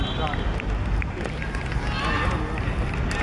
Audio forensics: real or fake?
real